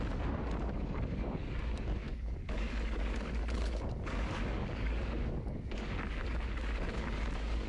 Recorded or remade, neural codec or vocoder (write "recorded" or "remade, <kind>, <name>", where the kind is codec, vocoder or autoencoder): remade, codec, DAC